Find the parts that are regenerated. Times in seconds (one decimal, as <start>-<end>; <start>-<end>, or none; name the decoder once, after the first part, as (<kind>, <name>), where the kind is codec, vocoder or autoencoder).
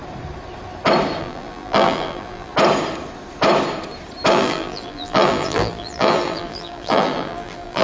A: 1.2-2.5 (vocoder, BigVGAN v2); 4.3-7.8